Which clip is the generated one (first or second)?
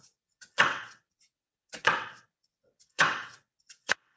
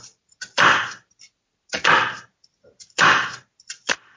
first